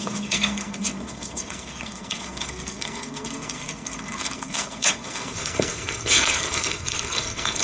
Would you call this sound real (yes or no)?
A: no